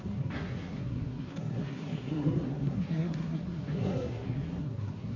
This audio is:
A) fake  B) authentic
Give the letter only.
A